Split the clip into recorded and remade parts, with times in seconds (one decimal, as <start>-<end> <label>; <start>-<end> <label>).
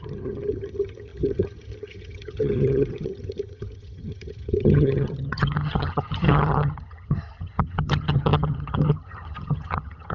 0.0-10.1 remade